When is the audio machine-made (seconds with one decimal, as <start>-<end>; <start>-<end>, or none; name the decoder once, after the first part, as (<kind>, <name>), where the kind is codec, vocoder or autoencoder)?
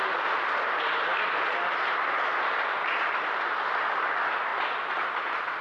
none